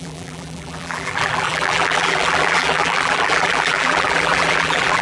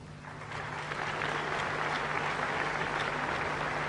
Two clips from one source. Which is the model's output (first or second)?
first